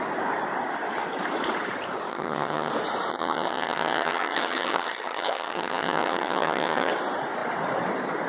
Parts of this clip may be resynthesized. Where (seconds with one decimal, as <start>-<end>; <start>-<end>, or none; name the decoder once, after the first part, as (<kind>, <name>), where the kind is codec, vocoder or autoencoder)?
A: 2.1-2.7 (vocoder, HiFi-GAN); 3.1-6.9

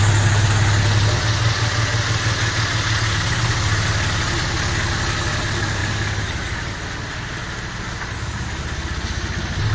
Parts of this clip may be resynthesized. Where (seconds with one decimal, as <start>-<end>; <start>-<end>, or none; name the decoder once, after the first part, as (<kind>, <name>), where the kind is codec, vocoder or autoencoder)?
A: none

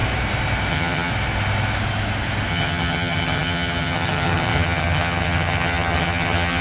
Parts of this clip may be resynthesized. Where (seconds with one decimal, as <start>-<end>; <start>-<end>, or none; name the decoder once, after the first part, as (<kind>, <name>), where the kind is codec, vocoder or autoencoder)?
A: 0.7-1.1 (vocoder, HiFi-GAN); 2.5-6.6

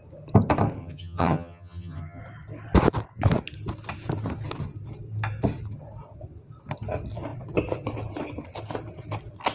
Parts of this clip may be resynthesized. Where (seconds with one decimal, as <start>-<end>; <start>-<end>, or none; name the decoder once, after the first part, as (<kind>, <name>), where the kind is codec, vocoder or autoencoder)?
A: 0.8-2.2 (vocoder, HiFi-GAN)

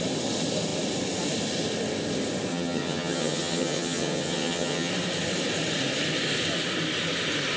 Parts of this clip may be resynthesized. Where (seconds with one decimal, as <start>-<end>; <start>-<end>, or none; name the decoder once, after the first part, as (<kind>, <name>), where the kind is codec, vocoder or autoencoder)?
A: 2.5-4.9 (vocoder, HiFi-GAN)

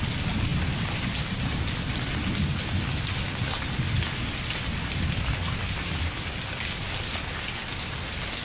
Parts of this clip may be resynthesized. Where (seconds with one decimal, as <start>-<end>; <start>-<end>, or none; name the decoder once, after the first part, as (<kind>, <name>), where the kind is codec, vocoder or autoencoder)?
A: none

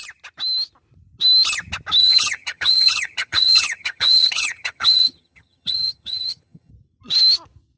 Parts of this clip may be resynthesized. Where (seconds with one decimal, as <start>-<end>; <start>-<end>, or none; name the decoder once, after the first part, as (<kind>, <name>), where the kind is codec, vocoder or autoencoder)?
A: 2.0-6.7 (vocoder, HiFi-GAN)